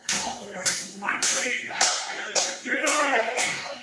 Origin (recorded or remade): remade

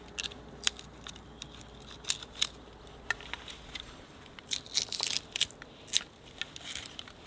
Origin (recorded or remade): recorded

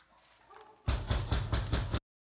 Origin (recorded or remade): recorded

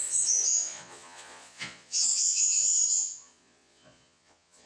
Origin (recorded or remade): remade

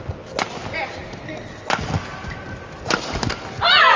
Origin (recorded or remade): recorded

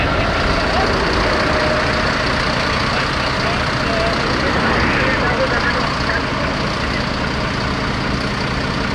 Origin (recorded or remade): recorded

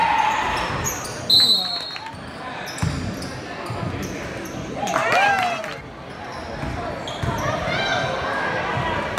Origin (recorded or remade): recorded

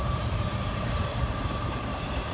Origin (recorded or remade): remade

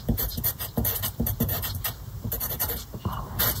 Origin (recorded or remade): remade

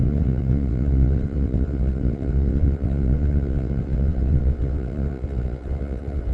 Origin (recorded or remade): remade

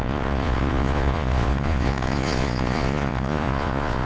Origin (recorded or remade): remade